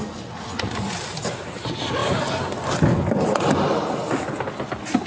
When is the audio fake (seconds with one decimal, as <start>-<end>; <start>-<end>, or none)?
none